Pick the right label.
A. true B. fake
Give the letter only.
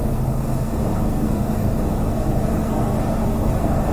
B